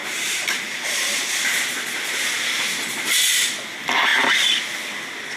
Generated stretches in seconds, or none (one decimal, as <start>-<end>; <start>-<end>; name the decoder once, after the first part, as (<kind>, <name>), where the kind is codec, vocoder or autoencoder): 0.0-1.6 (vocoder, BigVGAN v2)